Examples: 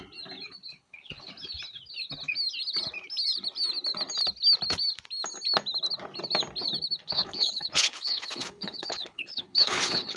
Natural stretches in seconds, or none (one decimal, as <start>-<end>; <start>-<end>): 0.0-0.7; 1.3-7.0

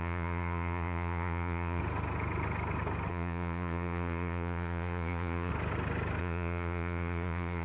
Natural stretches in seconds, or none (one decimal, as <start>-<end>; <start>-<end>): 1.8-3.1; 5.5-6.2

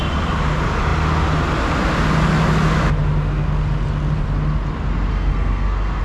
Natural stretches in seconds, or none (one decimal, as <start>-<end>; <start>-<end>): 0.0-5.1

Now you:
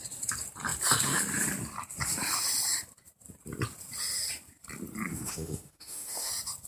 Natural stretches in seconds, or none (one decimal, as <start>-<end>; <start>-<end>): 0.0-5.1; 6.3-6.7

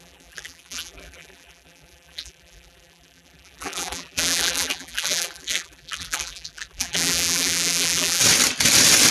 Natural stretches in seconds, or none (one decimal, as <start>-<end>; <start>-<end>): 8.2-9.1

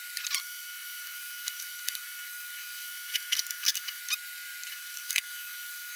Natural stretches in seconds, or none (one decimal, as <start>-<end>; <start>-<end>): 0.0-0.4; 4.0-4.7